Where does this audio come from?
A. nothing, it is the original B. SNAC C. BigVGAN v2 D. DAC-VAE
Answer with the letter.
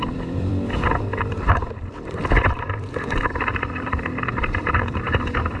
C